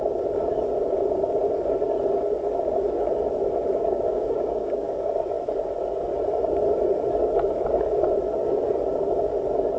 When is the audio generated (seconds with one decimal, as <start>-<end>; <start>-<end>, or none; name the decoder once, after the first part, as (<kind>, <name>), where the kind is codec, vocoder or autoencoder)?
3.8-5.1 (codec, DAC)